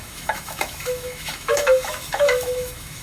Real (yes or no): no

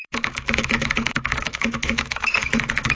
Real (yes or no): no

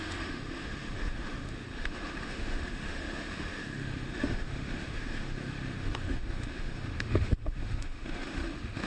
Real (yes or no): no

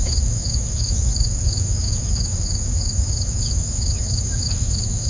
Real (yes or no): no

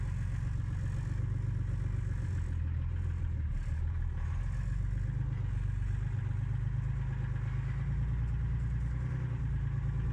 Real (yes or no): yes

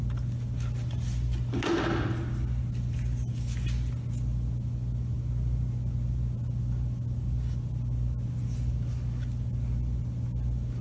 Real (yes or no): yes